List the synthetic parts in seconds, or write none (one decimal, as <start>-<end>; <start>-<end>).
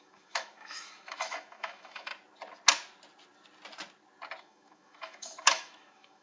0.0-2.1; 4.4-6.2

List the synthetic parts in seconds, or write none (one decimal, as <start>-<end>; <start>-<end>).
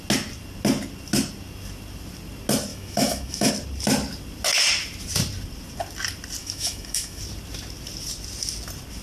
2.7-3.5; 6.4-7.2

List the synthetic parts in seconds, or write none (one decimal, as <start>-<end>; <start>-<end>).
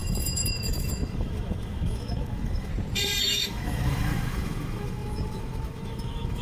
0.0-2.7; 3.2-6.4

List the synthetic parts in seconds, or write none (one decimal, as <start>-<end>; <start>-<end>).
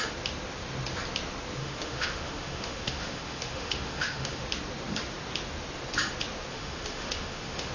1.6-4.4; 6.5-7.7